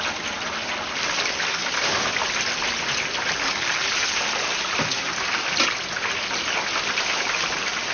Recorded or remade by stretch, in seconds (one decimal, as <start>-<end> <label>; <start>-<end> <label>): 0.0-7.9 recorded